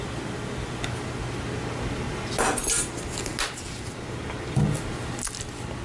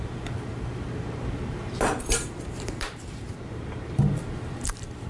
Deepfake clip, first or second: second